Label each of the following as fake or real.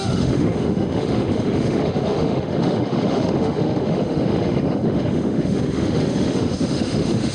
fake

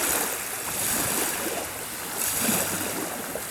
real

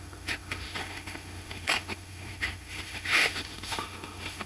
fake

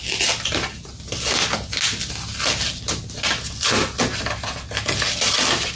real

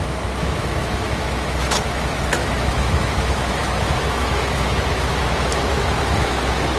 fake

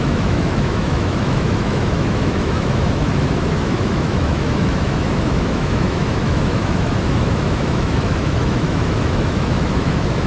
fake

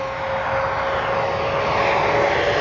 real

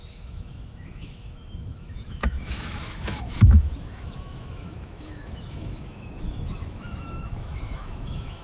fake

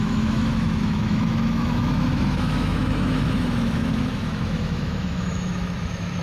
fake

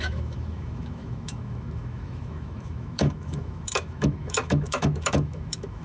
fake